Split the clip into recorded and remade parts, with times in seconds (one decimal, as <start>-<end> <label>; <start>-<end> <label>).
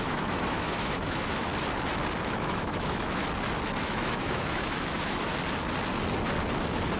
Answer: 0.0-1.5 remade; 1.5-2.4 recorded; 2.4-3.2 remade; 3.2-3.8 recorded; 3.8-5.3 remade; 5.3-7.0 recorded